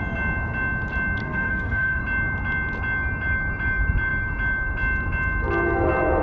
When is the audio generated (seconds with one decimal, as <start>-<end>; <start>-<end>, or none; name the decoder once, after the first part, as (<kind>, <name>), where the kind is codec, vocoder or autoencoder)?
1.2-2.0 (codec, SNAC)